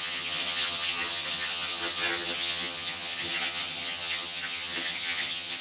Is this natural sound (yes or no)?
no